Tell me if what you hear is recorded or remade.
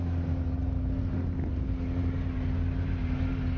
recorded